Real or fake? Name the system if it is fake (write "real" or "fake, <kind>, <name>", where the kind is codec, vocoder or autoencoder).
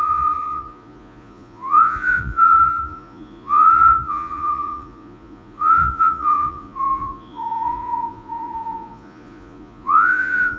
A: fake, vocoder, Vocos